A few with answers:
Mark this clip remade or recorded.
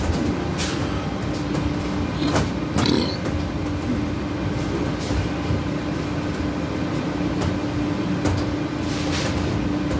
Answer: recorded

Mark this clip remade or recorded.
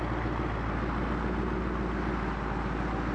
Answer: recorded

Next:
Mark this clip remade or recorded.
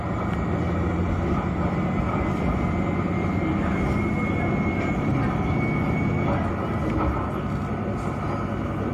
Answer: recorded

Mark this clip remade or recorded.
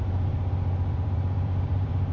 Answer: remade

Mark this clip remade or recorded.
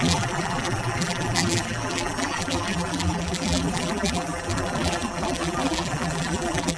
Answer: remade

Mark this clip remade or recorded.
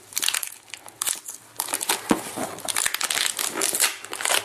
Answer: recorded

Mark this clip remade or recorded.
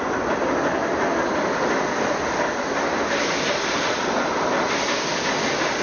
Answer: recorded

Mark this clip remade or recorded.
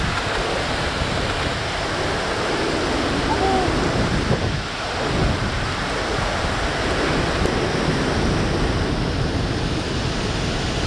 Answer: recorded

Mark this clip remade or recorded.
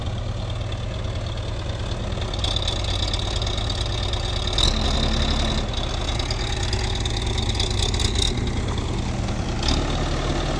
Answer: recorded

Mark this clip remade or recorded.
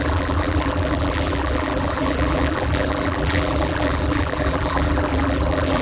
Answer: remade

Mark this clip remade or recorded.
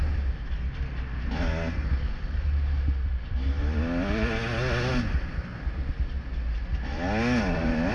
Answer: recorded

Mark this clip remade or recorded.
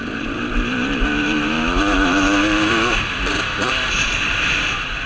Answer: remade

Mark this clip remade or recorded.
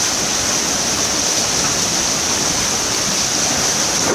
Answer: remade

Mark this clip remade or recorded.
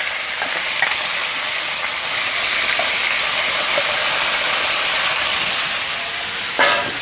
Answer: remade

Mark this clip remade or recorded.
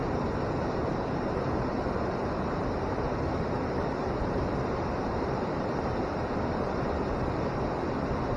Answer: remade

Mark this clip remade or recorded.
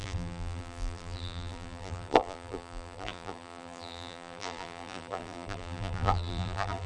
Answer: remade